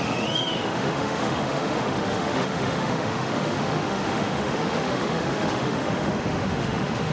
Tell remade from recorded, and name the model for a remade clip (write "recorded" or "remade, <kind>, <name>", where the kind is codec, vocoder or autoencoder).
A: remade, autoencoder, DAC-VAE